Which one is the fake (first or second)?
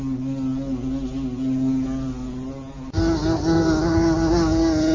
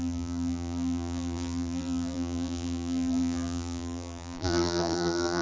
second